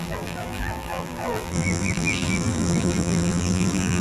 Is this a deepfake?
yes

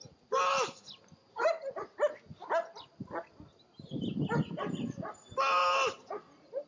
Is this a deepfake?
no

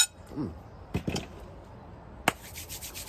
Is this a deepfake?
no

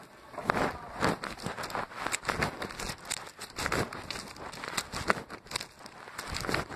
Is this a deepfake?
no